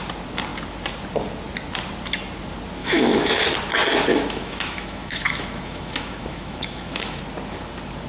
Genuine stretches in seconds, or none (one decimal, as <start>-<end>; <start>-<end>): 0.0-2.8; 3.3-4.1; 7.2-8.1